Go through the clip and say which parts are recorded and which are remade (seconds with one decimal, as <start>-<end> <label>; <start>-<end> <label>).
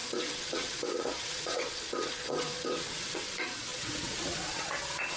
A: 0.0-5.2 remade